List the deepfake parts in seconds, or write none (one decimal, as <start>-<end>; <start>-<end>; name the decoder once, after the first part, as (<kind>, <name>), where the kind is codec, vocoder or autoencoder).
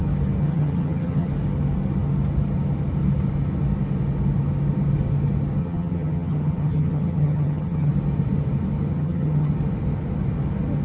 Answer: 0.4-1.3 (vocoder, HiFi-GAN); 5.6-7.9; 8.9-9.5